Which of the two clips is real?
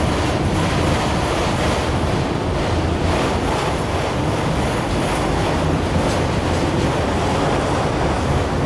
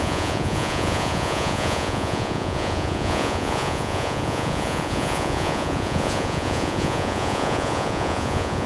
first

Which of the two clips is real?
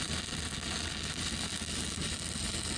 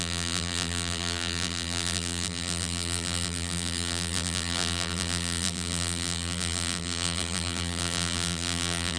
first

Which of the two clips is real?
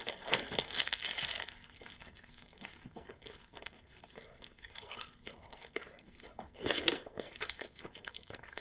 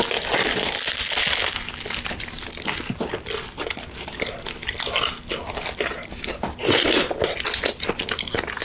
second